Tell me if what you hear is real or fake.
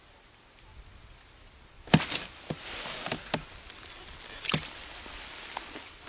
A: real